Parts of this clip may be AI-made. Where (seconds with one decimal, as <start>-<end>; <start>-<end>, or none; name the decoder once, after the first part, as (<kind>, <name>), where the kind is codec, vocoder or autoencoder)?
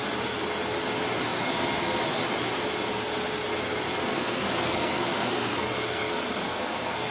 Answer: 4.1-7.1 (codec, SNAC)